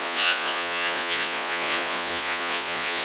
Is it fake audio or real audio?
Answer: fake